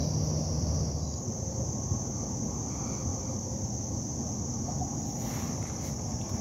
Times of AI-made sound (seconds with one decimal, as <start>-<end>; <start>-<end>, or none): none